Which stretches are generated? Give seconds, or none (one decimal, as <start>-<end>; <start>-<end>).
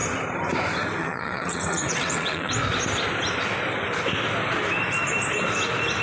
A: 1.0-2.5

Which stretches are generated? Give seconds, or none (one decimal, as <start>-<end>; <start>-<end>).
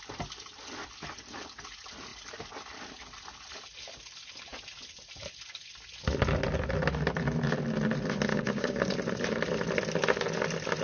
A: 8.3-8.9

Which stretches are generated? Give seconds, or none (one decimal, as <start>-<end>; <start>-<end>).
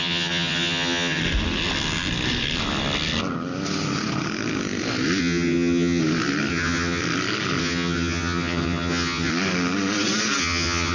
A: 0.0-1.2; 5.2-6.0; 6.5-7.0; 7.6-9.3; 10.4-10.9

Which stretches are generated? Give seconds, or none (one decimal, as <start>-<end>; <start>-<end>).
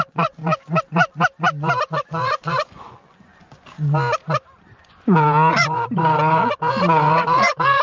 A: 0.0-0.4; 1.9-3.3; 4.8-7.8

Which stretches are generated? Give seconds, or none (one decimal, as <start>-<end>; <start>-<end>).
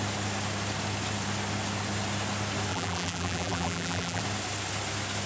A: 2.7-4.2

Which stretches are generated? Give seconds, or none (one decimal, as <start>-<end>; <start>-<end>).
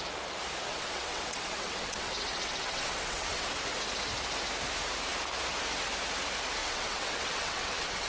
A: 0.7-3.5; 6.6-8.1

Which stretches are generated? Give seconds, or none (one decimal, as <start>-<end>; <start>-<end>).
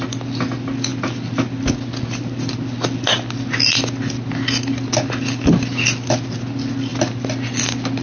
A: 6.9-7.6